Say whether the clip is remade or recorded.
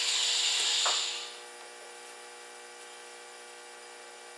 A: recorded